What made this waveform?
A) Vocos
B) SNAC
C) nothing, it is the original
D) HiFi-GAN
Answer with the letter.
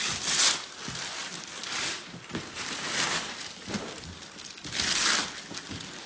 C